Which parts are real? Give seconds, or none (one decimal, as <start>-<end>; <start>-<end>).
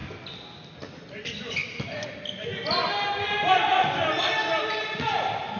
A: 0.0-5.6